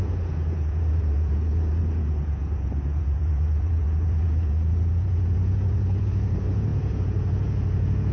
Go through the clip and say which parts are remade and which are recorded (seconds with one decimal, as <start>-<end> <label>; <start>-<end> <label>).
0.0-8.1 remade